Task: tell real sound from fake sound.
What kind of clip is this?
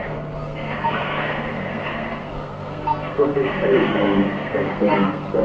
fake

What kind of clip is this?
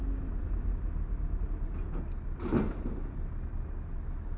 real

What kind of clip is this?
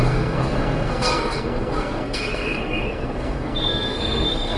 fake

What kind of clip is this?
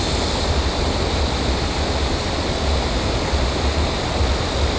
real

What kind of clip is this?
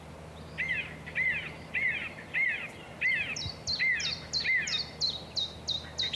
real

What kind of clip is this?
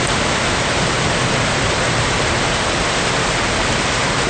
real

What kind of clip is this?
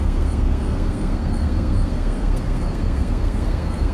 fake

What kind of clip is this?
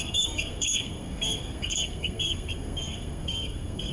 fake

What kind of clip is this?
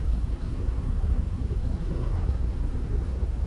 fake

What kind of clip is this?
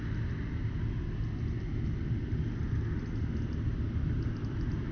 real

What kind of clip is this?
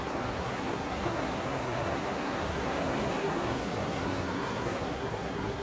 fake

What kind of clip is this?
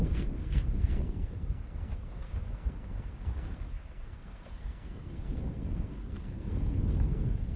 fake